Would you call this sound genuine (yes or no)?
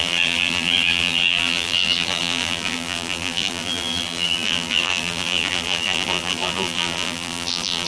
no